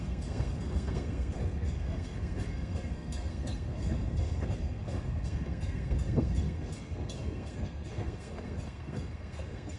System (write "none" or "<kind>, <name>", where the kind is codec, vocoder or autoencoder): codec, SNAC